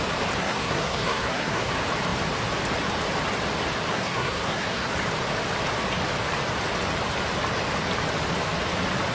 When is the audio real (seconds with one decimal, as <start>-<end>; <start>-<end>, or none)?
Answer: 0.0-0.4; 1.7-3.9; 4.9-9.1

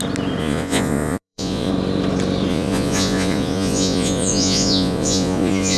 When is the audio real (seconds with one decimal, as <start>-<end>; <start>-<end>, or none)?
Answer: 0.0-0.4; 1.7-2.5

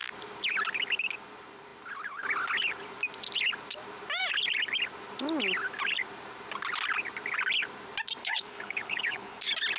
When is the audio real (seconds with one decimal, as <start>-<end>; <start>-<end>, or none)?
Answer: 0.0-8.2; 9.4-9.8

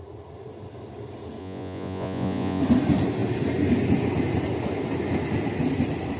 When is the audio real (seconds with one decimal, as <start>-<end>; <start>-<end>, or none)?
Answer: 0.0-1.4; 2.6-6.2

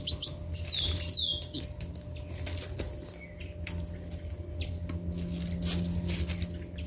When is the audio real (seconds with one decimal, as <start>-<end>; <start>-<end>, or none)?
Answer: 0.0-6.9

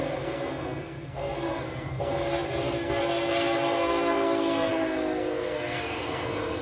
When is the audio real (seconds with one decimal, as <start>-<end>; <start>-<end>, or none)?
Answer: none